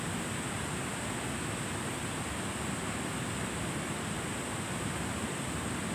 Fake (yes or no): no